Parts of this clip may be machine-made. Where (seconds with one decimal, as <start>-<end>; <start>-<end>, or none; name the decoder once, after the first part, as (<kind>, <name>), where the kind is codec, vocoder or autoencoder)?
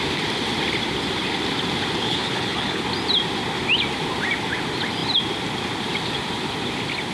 2.0-2.8 (codec, HILCodec)